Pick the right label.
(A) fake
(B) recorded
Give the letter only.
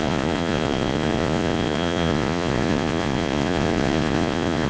A